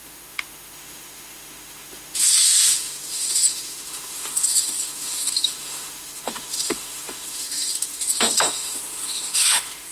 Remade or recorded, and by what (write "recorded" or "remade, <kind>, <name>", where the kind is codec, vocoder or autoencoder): remade, autoencoder, DAC-VAE